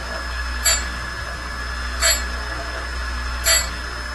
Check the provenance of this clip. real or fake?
real